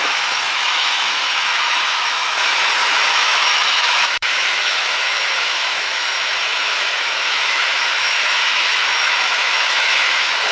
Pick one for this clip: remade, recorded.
remade